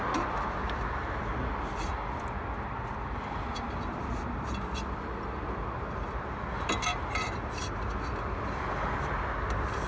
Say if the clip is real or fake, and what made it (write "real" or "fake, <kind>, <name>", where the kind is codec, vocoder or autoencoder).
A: real